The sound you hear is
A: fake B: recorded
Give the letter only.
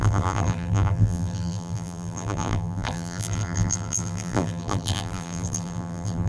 A